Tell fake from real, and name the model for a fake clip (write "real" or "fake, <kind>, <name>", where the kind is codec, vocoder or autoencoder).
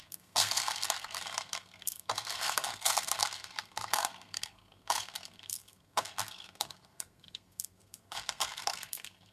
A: fake, codec, SNAC